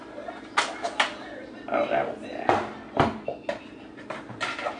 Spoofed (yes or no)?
no